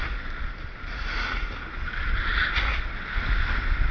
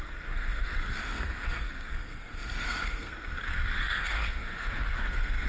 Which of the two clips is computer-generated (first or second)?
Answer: second